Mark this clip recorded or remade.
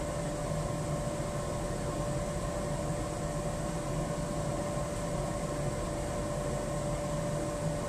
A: recorded